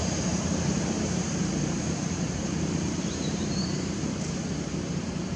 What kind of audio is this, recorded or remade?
remade